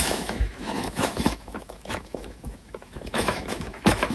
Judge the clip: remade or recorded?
remade